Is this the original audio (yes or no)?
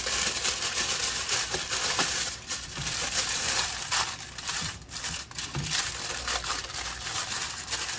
no